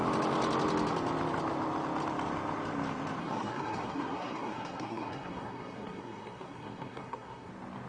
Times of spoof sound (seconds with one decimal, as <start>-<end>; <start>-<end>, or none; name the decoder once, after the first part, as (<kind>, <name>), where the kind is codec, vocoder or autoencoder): 3.2-7.5 (codec, SNAC)